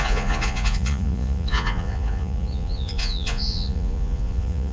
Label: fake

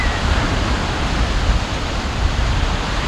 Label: fake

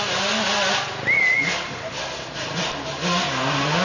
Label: real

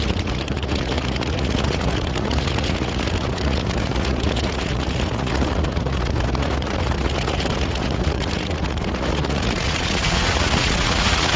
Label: fake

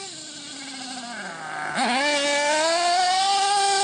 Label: real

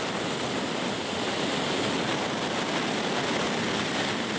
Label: real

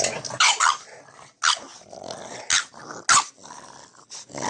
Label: real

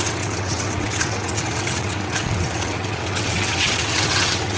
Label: fake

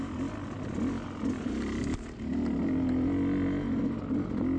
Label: real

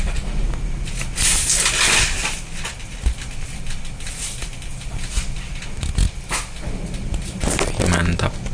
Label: real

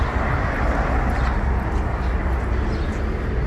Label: real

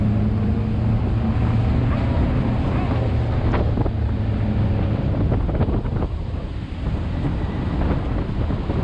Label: real